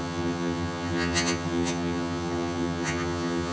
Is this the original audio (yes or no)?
no